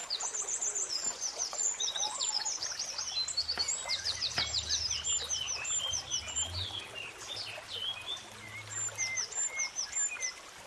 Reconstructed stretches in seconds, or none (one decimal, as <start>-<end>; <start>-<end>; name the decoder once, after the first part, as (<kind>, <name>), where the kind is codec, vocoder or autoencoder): 0.0-2.7 (vocoder, Vocos)